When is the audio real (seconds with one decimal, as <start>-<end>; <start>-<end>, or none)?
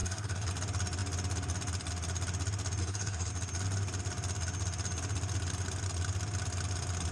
0.5-2.8; 3.3-7.1